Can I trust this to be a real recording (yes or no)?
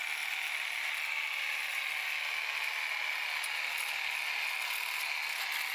yes